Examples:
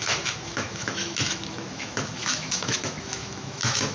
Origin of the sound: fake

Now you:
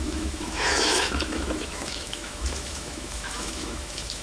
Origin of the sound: fake